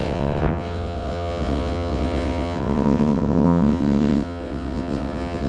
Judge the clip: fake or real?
fake